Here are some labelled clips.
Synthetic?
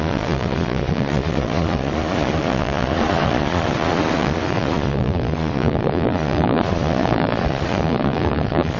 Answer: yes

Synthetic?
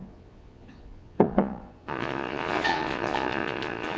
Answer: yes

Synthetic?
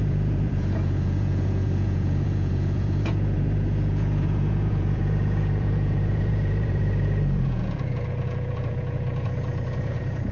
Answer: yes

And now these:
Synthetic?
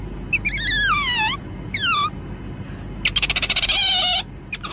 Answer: no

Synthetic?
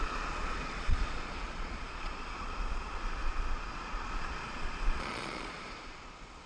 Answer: yes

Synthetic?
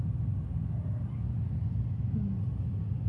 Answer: no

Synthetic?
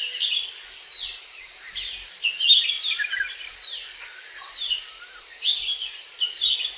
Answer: no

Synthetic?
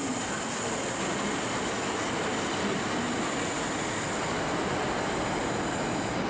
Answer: no